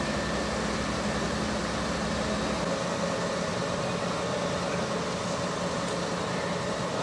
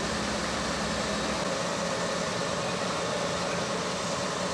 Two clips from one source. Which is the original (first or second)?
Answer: first